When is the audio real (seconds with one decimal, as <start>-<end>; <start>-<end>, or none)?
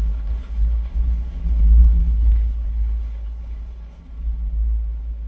1.4-2.0; 4.0-5.3